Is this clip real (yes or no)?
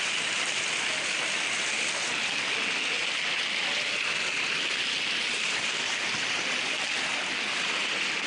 yes